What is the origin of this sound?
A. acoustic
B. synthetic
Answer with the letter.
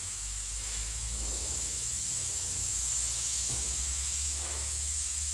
B